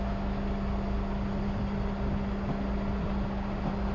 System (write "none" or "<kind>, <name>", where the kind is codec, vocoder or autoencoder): none